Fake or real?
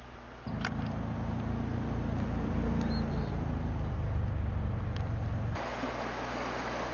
real